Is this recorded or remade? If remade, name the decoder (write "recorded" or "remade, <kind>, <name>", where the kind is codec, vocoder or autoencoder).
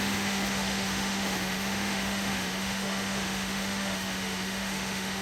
remade, autoencoder, DAC-VAE